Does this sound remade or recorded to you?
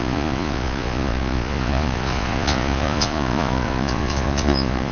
remade